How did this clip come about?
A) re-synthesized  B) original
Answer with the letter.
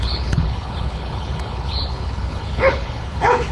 A